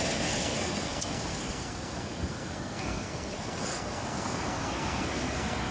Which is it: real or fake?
fake